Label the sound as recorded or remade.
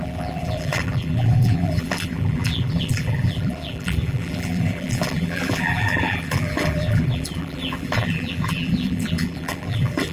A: remade